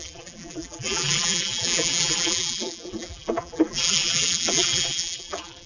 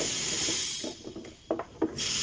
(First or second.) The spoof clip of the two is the first